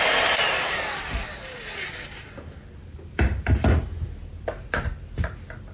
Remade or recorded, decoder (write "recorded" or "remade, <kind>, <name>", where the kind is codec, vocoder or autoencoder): remade, vocoder, BigVGAN v2